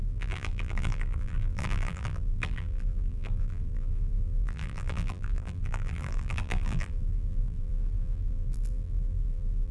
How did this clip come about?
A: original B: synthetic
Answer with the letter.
B